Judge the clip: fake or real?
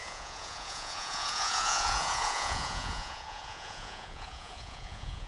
fake